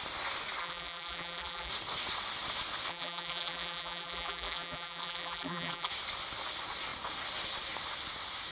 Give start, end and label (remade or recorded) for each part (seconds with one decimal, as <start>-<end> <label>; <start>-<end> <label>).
0.0-0.6 recorded; 0.6-1.7 remade; 1.7-2.9 recorded; 2.9-5.9 remade; 5.9-8.5 recorded